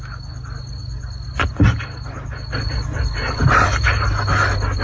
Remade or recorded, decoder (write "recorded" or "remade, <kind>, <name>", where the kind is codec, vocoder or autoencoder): recorded